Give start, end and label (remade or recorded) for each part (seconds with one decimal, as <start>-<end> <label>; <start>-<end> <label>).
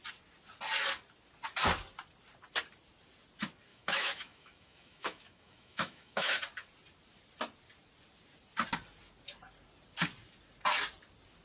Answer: 0.0-3.7 recorded; 3.7-6.4 remade; 6.4-11.4 recorded